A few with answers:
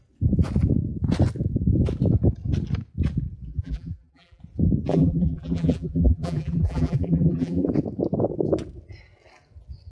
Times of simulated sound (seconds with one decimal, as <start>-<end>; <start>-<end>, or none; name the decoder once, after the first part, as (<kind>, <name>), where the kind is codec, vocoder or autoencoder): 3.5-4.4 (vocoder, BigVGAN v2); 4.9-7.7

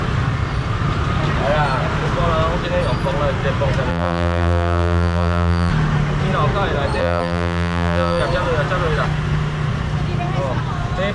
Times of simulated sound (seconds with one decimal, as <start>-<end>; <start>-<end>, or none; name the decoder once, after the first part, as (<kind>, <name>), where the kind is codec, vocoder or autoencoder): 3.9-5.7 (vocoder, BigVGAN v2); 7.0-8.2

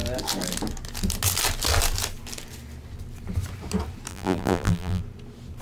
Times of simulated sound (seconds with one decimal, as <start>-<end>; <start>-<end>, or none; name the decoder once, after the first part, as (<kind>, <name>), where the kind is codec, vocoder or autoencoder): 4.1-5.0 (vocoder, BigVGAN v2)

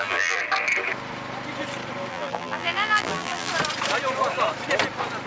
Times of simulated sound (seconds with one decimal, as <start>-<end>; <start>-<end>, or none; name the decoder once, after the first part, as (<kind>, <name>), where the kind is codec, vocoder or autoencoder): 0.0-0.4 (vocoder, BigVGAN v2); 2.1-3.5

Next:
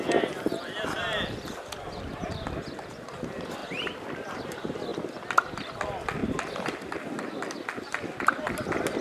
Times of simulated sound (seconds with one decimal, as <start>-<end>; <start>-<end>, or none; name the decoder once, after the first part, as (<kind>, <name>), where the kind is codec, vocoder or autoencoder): 3.6-4.3 (vocoder, BigVGAN v2); 4.9-5.7

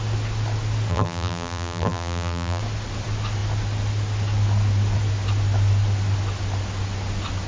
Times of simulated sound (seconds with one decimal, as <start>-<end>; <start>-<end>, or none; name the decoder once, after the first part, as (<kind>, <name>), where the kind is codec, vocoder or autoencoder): 0.9-2.6 (vocoder, BigVGAN v2)